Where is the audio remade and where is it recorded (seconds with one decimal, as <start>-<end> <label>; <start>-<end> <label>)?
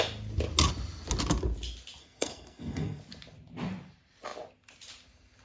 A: 0.0-2.0 recorded; 2.0-3.0 remade; 3.0-5.4 recorded